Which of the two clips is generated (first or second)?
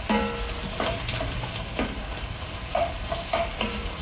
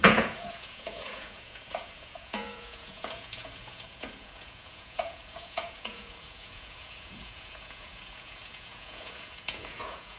second